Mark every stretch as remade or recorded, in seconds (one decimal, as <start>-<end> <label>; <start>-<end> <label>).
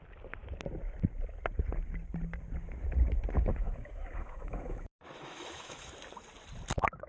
0.0-3.5 recorded; 3.5-5.9 remade; 5.9-7.1 recorded